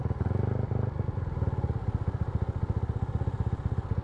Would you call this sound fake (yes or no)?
no